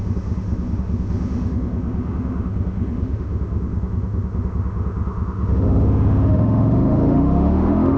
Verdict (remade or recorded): remade